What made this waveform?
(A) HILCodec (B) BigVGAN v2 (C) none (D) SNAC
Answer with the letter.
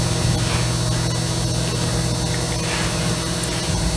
C